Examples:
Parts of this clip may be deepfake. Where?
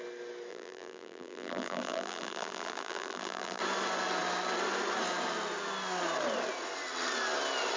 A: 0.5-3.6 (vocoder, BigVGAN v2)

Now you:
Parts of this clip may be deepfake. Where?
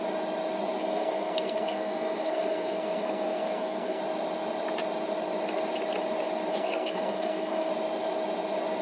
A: 0.8-4.0 (codec, SNAC); 6.5-7.7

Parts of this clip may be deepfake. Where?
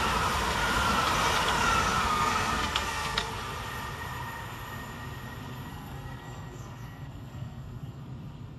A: 1.9-3.3 (codec, SNAC); 5.7-8.0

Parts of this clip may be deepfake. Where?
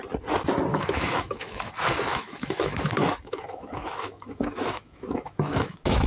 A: 0.7-1.7 (autoencoder, DAC-VAE); 2.1-6.1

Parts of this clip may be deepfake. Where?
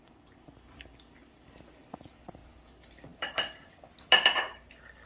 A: none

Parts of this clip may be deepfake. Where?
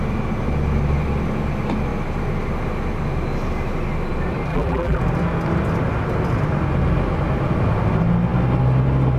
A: 4.5-5.0 (vocoder, BigVGAN v2)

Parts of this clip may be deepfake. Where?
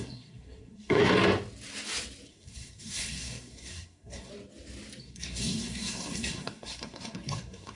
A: 0.0-1.0 (codec, SNAC); 2.3-4.3; 5.0-7.8